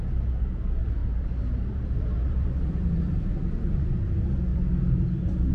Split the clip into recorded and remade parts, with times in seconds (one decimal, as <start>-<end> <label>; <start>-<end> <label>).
0.0-1.0 recorded; 1.0-3.3 remade; 3.3-5.5 recorded